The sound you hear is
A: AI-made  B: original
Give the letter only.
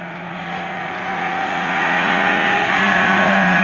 A